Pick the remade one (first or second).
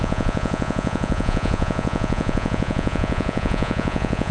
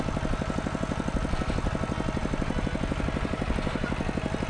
first